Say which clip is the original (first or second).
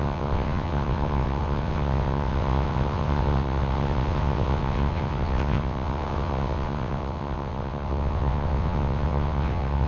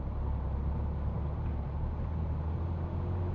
second